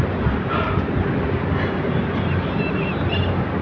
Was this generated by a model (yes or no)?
no